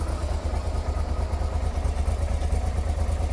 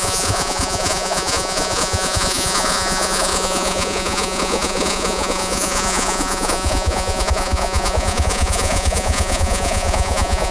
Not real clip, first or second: second